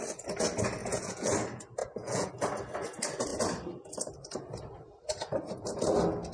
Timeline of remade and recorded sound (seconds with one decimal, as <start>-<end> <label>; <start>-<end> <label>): 0.0-0.8 recorded; 0.8-1.3 remade; 1.3-1.8 recorded; 1.8-2.3 remade; 2.3-6.3 recorded